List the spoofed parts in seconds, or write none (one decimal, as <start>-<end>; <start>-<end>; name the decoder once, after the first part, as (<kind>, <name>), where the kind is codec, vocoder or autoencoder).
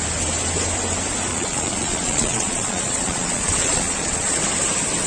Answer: 1.3-4.4 (vocoder, Vocos)